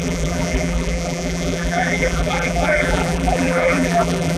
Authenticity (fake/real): fake